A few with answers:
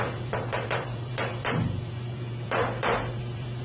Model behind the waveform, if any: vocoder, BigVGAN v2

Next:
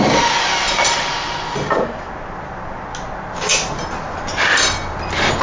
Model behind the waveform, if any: none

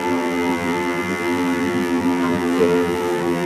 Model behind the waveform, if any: vocoder, BigVGAN v2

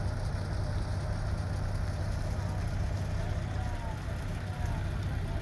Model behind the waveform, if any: none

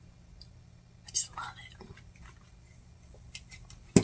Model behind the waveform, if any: none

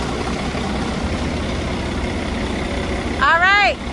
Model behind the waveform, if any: none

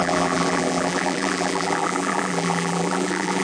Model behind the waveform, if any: vocoder, BigVGAN v2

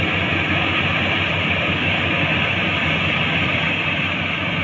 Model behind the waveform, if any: none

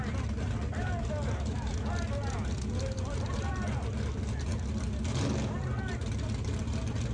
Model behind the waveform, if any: none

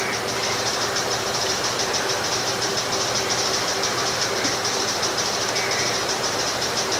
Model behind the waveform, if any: vocoder, BigVGAN v2